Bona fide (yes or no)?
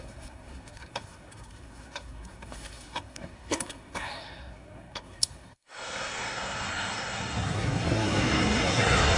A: no